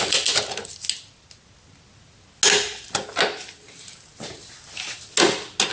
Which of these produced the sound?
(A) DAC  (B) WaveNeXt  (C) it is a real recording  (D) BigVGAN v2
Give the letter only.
C